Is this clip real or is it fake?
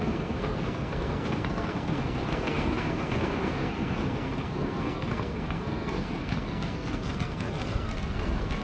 fake